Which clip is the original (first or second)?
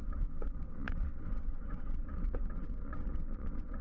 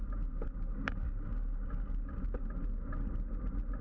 second